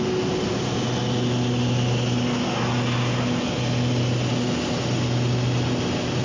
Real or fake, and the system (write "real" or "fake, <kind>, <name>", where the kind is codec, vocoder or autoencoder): real